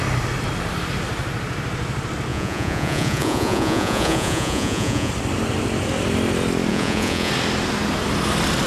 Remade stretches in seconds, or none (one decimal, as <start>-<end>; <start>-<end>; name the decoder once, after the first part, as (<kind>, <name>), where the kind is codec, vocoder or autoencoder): 2.3-5.1 (vocoder, Vocos); 6.7-7.3